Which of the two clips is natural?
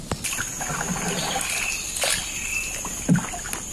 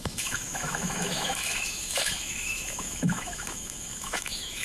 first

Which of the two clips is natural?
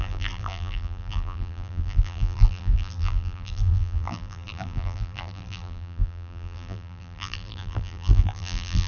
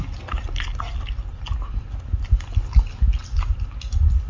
second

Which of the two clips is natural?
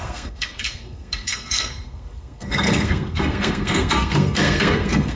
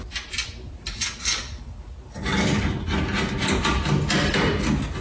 second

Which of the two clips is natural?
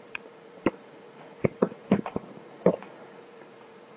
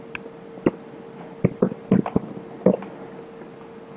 second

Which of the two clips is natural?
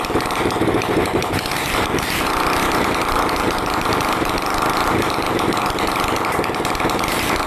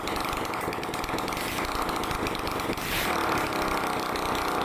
second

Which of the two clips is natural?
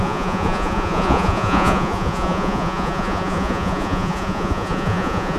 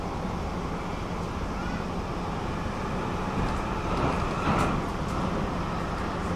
second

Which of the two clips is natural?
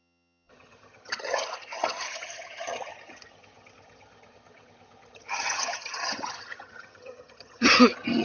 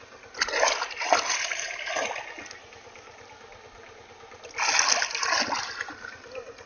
second